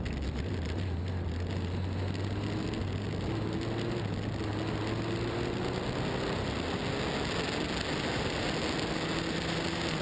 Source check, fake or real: real